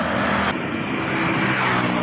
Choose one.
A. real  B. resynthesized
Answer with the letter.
A